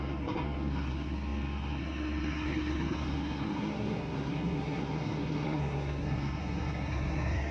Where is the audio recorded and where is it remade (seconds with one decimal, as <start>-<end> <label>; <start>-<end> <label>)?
0.0-7.5 remade